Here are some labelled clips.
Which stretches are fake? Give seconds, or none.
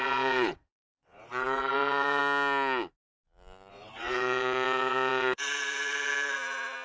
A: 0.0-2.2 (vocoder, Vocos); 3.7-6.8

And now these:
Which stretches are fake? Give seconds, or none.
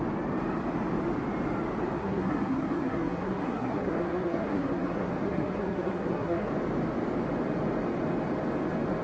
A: 2.0-6.5 (codec, SNAC)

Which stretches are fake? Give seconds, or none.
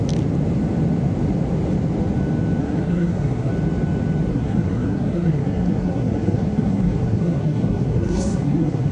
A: 2.6-3.5 (codec, SNAC); 4.3-8.9